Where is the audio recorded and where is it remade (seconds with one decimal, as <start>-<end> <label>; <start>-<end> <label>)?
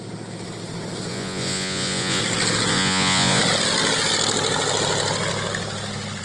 0.0-1.1 recorded; 1.1-2.2 remade; 2.2-2.7 recorded; 2.7-3.4 remade; 3.4-6.2 recorded